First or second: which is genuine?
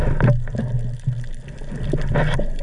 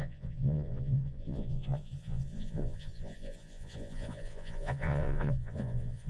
first